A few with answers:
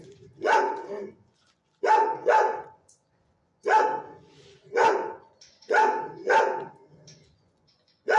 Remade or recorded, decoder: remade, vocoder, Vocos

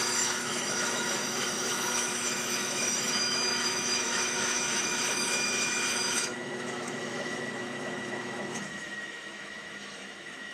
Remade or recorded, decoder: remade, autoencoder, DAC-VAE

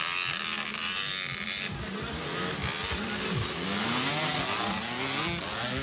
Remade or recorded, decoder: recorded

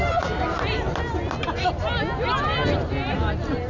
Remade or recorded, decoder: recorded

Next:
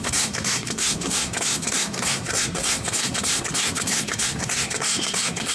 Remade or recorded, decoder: remade, codec, SNAC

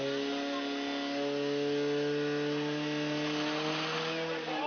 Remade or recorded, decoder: recorded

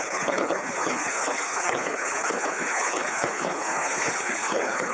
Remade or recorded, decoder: remade, codec, HILCodec